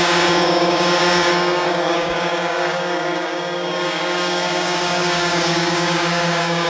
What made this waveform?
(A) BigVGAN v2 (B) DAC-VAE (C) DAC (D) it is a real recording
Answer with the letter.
C